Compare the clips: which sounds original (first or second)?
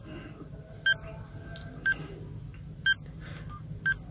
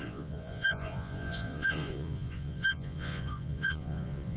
first